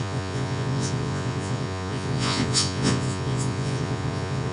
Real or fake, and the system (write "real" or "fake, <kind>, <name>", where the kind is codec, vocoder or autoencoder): fake, vocoder, Vocos